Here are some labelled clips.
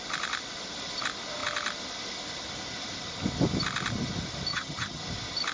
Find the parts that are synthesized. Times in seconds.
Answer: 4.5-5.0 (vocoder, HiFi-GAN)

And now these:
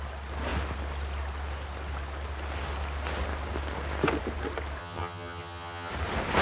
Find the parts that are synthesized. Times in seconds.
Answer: 4.8-5.9 (vocoder, HiFi-GAN)

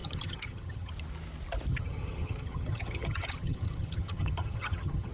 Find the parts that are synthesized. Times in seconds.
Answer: 0.0-0.9 (vocoder, HiFi-GAN); 1.7-5.1

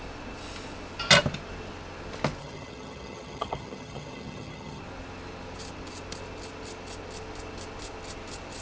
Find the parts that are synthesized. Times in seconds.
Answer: 2.4-4.8 (vocoder, HiFi-GAN)

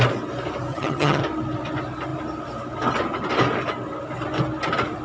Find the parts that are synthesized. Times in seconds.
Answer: 0.7-1.2 (vocoder, HiFi-GAN)

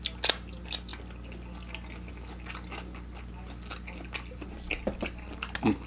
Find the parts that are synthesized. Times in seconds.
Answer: none